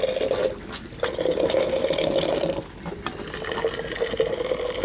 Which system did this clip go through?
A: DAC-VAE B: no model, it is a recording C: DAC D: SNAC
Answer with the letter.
B